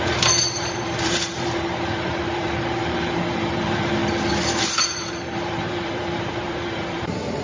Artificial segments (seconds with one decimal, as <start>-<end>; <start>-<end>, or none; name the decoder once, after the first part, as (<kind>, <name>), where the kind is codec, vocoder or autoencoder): 0.0-4.0 (vocoder, BigVGAN v2); 4.6-7.4